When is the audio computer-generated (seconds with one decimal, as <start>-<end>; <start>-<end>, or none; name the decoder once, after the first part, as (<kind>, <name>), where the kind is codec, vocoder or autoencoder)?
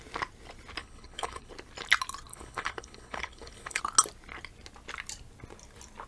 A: 0.8-1.5 (codec, HILCodec); 2.3-3.8